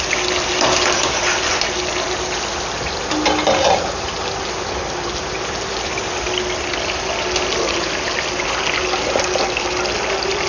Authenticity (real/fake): real